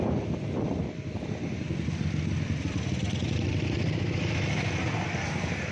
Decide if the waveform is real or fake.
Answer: fake